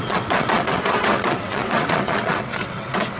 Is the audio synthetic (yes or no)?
yes